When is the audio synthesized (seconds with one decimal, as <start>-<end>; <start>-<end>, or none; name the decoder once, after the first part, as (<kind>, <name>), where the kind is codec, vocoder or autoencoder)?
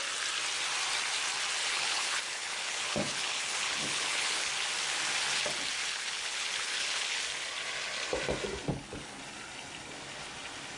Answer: 1.6-4.5 (codec, HILCodec); 5.8-7.2; 8.7-9.2